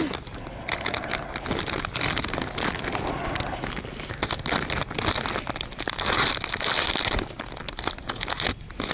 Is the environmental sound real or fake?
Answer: real